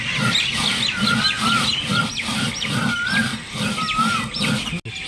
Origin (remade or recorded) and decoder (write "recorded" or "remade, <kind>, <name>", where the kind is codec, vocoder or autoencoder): recorded